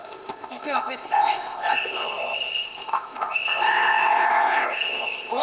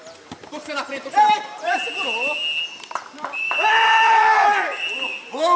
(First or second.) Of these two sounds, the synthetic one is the first